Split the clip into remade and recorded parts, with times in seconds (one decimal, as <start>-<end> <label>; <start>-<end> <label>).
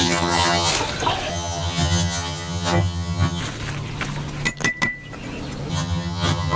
0.0-0.7 remade; 0.7-1.3 recorded; 1.3-3.4 remade; 3.4-5.7 recorded; 5.7-6.6 remade